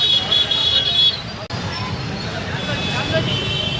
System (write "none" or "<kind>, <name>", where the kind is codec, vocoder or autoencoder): none